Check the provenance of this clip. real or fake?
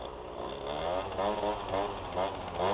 real